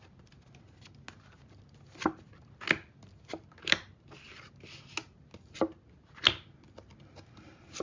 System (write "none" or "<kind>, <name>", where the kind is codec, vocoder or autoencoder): none